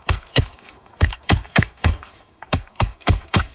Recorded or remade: remade